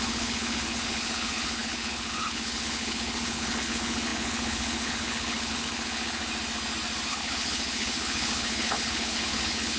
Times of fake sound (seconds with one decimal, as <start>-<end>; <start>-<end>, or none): 0.0-6.2; 7.1-9.8